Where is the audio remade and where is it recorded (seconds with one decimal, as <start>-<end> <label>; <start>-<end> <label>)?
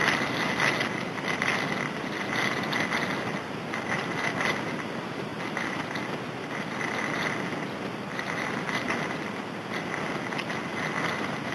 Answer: 0.0-11.5 recorded